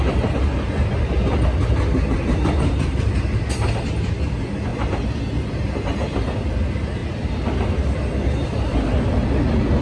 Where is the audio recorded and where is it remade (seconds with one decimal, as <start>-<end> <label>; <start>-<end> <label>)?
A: 0.0-9.8 recorded